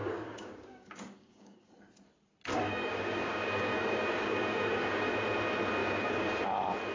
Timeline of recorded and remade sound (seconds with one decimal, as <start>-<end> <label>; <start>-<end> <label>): 0.0-1.7 remade; 1.7-2.5 recorded; 2.5-5.1 remade; 5.1-5.8 recorded; 5.8-6.4 remade; 6.4-6.9 recorded